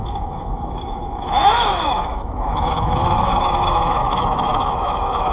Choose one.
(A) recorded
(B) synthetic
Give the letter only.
B